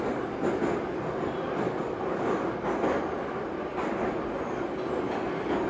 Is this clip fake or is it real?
real